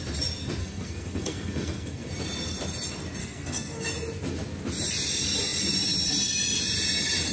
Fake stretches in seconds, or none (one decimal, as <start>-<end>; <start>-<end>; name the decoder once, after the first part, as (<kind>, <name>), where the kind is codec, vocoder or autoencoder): 0.6-2.1 (codec, SNAC); 3.2-3.9